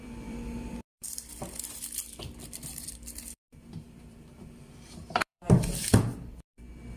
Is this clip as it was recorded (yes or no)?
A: no